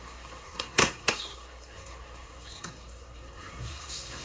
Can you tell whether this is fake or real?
fake